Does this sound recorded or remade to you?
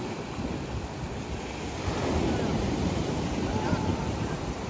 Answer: recorded